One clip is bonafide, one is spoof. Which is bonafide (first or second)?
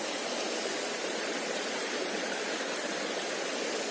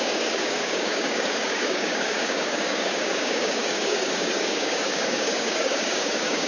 first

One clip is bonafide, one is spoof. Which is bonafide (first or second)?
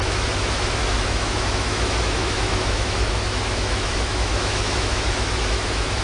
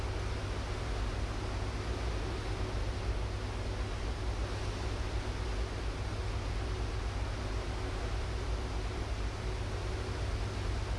second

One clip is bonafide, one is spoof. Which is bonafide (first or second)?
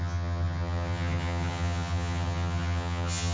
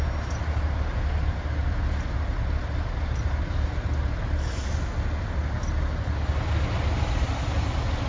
second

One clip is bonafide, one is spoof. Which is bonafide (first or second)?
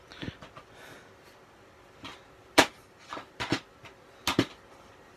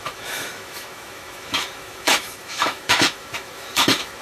first